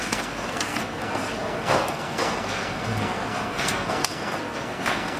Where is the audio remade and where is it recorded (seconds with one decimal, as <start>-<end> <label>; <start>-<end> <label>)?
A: 0.0-5.2 remade